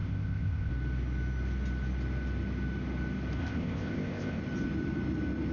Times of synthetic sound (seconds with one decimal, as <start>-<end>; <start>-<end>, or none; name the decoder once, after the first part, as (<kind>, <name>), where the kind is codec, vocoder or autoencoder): 0.0-0.7 (codec, ZipCodec); 3.4-4.4